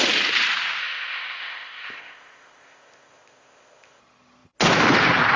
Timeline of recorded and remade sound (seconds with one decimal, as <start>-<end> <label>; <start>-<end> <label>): 0.0-0.8 recorded; 0.8-4.0 remade; 4.0-5.4 recorded